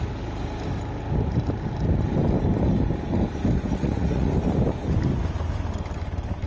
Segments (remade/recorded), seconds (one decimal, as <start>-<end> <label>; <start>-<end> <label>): 0.0-3.6 recorded; 3.6-4.3 remade; 4.3-6.5 recorded